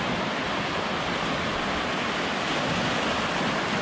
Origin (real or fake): real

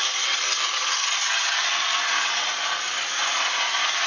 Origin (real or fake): real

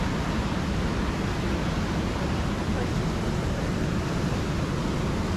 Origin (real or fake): real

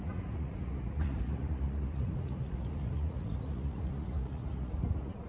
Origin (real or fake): fake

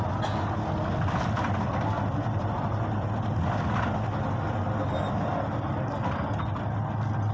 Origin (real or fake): real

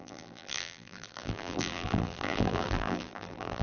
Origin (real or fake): fake